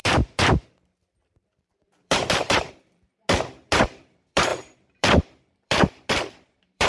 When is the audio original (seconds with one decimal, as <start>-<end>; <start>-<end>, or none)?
3.2-3.9